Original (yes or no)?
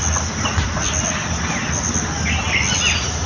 yes